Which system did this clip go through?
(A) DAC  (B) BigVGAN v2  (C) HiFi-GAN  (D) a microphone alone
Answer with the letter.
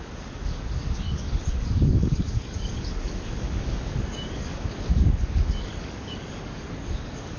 A